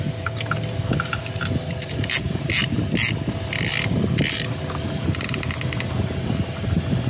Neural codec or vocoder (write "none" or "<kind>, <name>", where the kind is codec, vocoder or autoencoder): none